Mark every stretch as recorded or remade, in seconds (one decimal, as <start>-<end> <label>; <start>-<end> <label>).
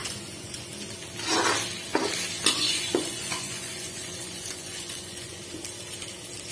0.0-0.7 remade; 0.7-2.6 recorded; 2.6-5.4 remade; 5.4-6.5 recorded